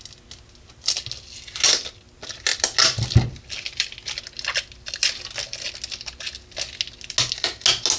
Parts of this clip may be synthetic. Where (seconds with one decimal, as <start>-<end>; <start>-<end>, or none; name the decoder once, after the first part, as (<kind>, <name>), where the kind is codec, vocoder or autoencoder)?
none

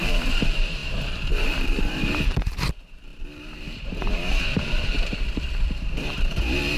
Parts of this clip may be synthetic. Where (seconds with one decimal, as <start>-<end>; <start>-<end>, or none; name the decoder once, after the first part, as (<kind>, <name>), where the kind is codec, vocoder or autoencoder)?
0.0-6.8 (vocoder, BigVGAN v2)

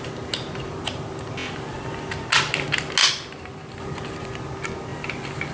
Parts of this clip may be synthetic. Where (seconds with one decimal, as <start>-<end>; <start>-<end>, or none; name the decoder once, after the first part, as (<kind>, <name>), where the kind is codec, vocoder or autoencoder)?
3.0-3.8 (vocoder, BigVGAN v2)